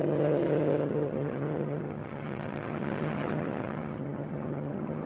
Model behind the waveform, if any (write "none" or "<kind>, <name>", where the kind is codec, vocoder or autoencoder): vocoder, HiFi-GAN